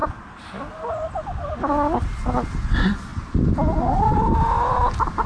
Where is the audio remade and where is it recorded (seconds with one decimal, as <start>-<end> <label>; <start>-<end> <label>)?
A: 0.0-5.3 recorded